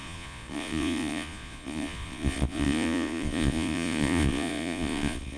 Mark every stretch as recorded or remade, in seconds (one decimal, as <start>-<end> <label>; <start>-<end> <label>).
0.0-5.4 remade